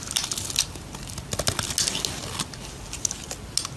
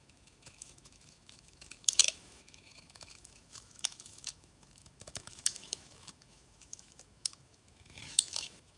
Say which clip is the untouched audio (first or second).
first